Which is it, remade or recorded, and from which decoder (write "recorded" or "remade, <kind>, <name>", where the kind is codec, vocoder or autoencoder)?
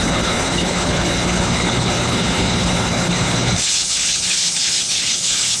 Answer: remade, codec, HILCodec